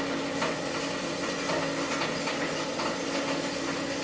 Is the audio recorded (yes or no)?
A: yes